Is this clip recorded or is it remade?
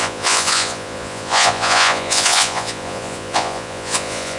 remade